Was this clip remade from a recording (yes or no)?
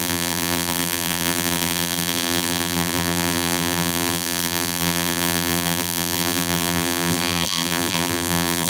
yes